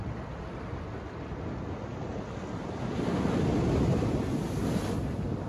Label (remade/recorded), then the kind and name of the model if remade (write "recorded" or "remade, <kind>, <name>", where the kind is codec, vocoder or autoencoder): recorded